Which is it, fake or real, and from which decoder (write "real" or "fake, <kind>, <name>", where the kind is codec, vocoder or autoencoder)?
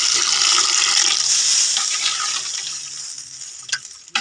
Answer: real